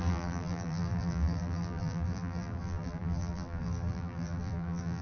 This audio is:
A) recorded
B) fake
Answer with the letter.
B